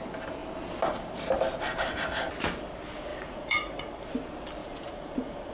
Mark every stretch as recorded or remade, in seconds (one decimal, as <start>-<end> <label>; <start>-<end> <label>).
0.0-3.1 recorded; 3.1-3.9 remade; 3.9-4.6 recorded; 4.6-5.5 remade